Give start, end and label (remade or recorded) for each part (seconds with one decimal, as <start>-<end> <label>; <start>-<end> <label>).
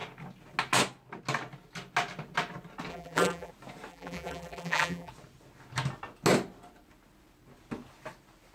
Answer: 0.0-2.9 recorded; 2.9-3.5 remade; 3.5-3.9 recorded; 3.9-5.1 remade; 5.1-8.5 recorded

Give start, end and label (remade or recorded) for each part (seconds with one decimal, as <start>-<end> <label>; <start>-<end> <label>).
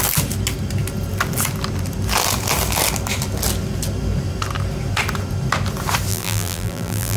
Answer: 0.0-6.1 recorded; 6.1-7.2 remade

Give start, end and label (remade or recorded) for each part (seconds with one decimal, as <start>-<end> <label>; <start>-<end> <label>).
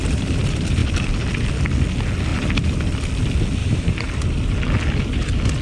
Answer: 0.0-3.6 recorded; 3.6-4.2 remade; 4.2-5.6 recorded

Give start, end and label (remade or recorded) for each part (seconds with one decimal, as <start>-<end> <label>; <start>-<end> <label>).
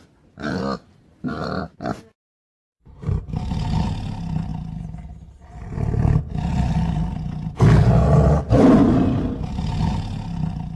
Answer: 0.0-2.7 recorded; 2.7-3.2 remade; 3.2-10.8 recorded